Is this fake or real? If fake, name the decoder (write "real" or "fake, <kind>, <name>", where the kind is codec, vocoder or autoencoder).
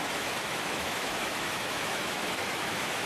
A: fake, autoencoder, DAC-VAE